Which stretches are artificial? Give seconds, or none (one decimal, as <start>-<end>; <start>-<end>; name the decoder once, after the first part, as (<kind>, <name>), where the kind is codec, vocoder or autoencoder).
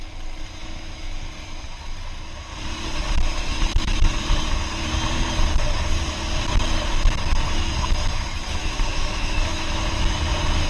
0.6-1.1 (autoencoder, DAC-VAE); 8.6-10.0